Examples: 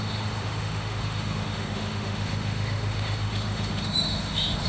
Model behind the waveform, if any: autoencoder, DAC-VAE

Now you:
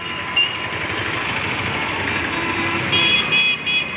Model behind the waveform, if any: none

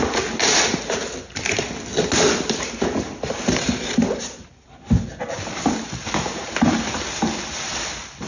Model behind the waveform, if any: none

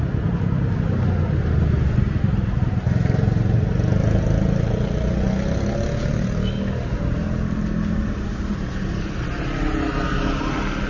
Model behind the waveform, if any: none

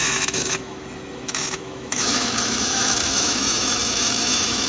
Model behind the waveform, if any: autoencoder, DAC-VAE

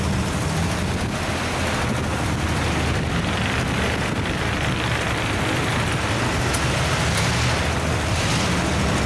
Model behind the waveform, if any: none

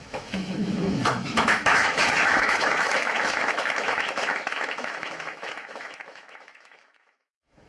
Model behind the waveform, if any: autoencoder, DAC-VAE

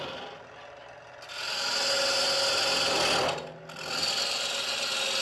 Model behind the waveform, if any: none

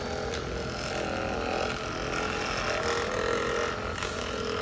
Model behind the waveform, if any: none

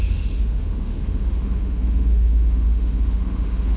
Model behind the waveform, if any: autoencoder, DAC-VAE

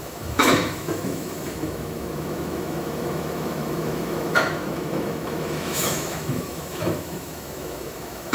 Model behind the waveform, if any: autoencoder, DAC-VAE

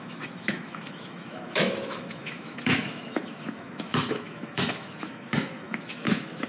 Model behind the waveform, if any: autoencoder, DAC-VAE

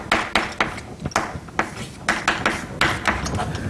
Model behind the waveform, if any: none